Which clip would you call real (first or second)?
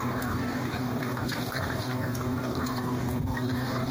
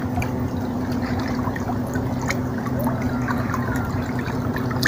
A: second